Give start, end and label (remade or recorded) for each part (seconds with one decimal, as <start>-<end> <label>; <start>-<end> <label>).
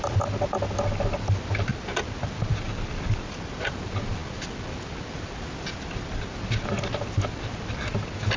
0.0-8.4 recorded